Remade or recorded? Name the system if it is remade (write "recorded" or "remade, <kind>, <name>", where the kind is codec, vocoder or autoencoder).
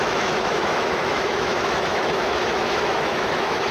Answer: remade, autoencoder, DAC-VAE